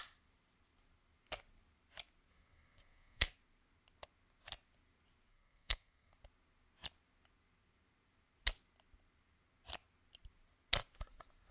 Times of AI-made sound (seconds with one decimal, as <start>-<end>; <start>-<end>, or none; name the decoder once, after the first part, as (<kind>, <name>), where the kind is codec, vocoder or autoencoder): 2.3-3.3 (codec, SNAC); 5.3-6.1